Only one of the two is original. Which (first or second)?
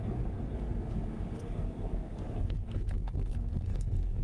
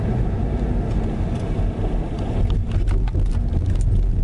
second